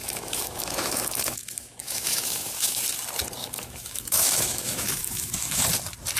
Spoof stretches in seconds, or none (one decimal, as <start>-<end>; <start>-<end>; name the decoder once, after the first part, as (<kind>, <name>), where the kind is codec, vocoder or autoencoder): 0.0-2.8 (autoencoder, DAC-VAE); 3.4-5.6